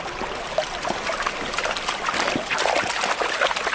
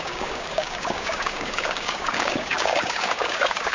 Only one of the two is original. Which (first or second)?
first